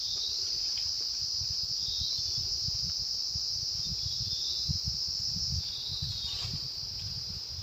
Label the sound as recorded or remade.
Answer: recorded